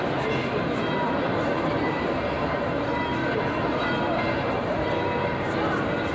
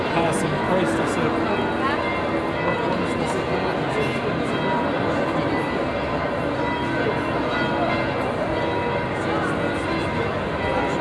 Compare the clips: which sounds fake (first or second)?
first